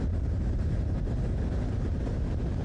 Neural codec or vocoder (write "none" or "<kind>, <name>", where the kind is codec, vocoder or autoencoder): none